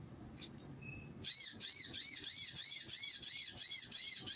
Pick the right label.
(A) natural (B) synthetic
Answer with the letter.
A